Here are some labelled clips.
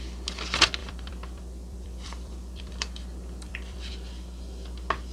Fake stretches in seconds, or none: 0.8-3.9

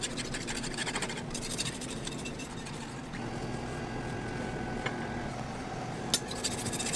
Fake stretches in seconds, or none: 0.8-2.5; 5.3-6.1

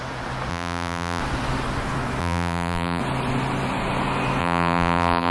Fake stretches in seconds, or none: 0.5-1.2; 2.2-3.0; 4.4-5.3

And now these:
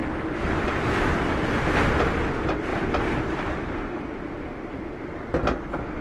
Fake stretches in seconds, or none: 0.0-0.8; 2.7-4.1